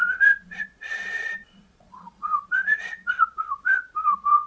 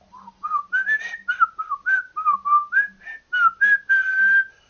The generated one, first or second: first